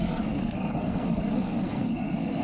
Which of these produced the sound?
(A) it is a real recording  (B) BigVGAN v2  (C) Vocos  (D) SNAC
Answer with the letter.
D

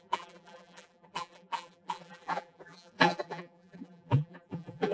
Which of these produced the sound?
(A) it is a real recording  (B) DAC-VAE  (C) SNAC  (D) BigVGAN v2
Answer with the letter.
D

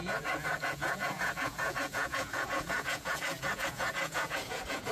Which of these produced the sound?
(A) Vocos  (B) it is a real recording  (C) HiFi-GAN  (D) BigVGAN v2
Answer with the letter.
A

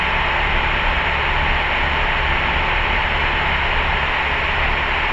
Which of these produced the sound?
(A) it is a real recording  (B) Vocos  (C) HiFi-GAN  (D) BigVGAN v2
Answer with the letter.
A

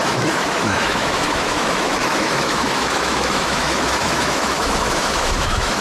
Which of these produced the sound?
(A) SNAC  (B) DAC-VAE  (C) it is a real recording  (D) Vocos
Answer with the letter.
B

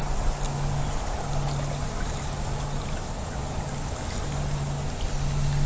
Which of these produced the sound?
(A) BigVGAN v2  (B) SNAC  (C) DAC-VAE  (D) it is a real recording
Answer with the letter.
D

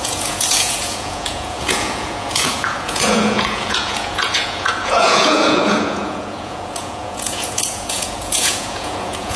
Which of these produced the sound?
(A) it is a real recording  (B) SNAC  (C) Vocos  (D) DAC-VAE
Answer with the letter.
C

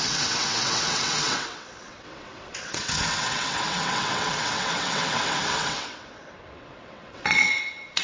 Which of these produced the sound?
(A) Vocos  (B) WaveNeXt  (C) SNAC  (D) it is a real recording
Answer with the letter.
B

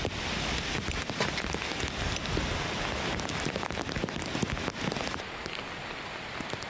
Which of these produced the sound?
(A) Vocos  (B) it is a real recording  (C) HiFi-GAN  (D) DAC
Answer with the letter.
B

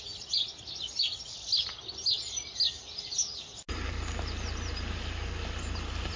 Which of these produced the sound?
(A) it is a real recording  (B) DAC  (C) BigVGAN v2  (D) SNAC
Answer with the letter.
A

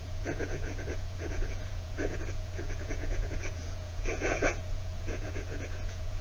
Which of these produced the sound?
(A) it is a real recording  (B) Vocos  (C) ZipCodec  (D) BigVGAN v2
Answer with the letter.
B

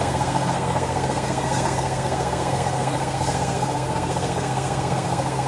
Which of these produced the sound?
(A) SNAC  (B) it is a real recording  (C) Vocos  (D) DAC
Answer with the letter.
A